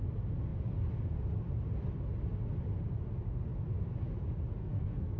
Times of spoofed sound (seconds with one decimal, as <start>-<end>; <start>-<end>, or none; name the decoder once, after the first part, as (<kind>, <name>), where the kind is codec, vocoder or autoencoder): 4.6-5.2 (codec, SNAC)